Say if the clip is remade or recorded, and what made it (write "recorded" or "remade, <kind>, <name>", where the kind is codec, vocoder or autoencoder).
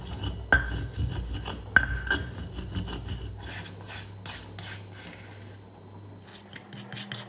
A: recorded